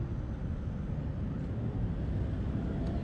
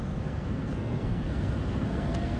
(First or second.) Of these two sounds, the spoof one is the second